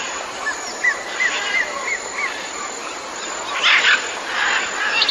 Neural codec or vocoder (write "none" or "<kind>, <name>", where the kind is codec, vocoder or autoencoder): none